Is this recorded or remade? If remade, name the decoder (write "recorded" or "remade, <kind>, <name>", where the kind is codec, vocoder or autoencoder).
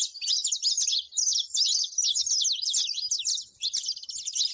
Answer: recorded